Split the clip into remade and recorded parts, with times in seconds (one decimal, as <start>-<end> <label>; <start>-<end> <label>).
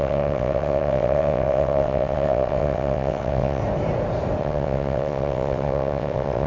0.0-3.6 remade; 3.6-4.4 recorded; 4.4-6.5 remade